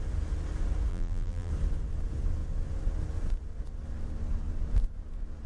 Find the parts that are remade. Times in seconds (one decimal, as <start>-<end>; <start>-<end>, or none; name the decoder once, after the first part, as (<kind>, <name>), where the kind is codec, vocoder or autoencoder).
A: 0.9-1.5 (vocoder, BigVGAN v2)

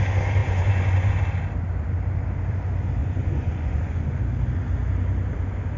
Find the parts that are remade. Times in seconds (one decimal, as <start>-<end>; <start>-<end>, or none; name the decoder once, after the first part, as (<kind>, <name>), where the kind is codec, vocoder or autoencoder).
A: 0.4-1.1 (vocoder, Vocos); 3.0-4.2

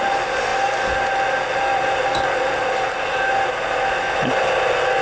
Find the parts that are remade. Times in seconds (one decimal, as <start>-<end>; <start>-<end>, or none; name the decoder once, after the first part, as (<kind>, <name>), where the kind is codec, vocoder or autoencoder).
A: none

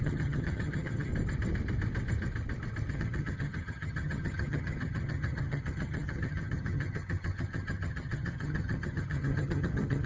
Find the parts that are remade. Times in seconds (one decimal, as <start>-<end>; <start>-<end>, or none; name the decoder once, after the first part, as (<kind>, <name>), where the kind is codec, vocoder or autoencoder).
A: 0.0-1.1 (vocoder, HiFi-GAN); 2.9-10.1

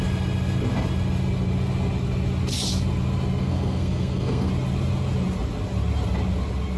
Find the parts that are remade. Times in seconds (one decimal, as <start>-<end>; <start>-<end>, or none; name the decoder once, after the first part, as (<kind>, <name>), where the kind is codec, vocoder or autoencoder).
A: 3.4-4.5 (codec, SNAC)